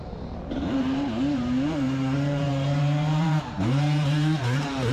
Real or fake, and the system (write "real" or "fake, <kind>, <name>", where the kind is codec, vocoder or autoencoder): fake, vocoder, BigVGAN v2